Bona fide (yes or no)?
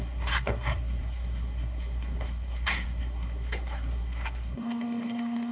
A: no